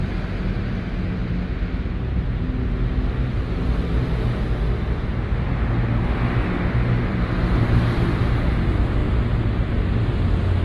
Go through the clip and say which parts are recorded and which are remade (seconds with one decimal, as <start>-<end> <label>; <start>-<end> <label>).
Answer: 0.0-7.1 recorded; 7.1-7.6 remade; 7.6-10.6 recorded

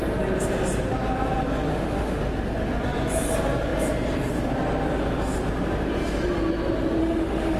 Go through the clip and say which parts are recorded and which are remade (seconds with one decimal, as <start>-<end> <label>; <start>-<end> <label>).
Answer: 0.0-1.7 recorded; 1.7-2.2 remade; 2.2-7.0 recorded; 7.0-7.6 remade

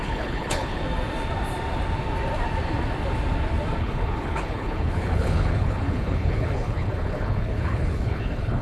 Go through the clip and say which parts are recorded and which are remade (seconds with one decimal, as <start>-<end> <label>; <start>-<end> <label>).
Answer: 0.0-0.8 remade; 0.8-3.8 recorded; 3.8-8.6 remade

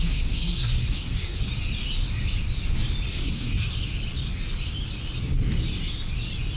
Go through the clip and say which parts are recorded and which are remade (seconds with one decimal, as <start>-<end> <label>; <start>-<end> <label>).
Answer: 0.0-1.5 remade; 1.5-3.1 recorded; 3.1-3.9 remade; 3.9-6.6 recorded

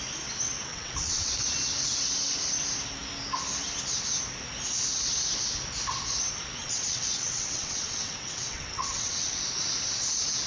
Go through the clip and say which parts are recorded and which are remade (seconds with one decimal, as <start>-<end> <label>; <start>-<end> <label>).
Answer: 0.0-0.7 recorded; 0.7-1.3 remade; 1.3-6.6 recorded; 6.6-9.4 remade; 9.4-10.5 recorded

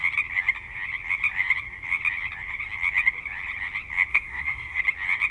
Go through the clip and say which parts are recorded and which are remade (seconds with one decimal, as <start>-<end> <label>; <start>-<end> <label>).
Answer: 0.0-4.1 recorded; 4.1-4.8 remade; 4.8-5.3 recorded